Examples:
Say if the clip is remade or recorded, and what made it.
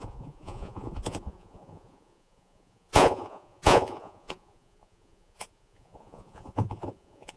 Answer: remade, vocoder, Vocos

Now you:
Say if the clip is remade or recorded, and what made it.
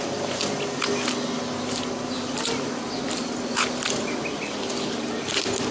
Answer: recorded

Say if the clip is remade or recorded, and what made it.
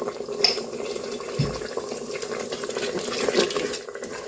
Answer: recorded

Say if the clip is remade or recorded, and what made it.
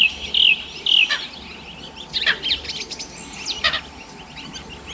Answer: recorded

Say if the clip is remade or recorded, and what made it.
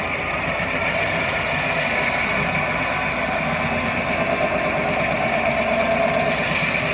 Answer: recorded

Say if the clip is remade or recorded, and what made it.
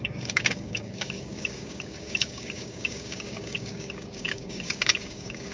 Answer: remade, codec, DAC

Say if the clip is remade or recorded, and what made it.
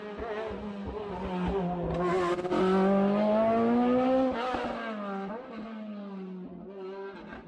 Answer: recorded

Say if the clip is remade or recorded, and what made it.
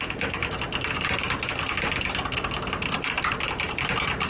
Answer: recorded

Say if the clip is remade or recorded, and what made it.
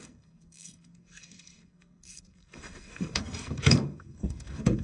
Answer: remade, codec, SNAC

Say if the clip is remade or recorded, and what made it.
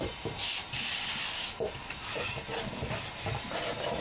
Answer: recorded